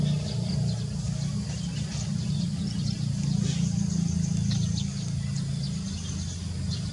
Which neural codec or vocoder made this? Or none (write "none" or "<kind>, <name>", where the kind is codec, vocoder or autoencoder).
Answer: none